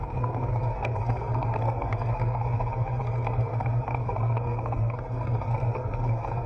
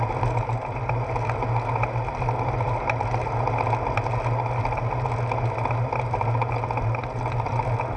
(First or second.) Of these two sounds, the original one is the second